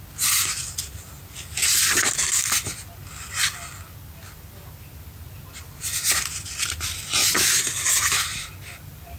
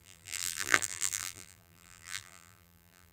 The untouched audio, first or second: first